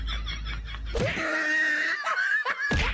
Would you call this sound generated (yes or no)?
no